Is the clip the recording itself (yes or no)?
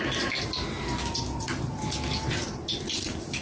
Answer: yes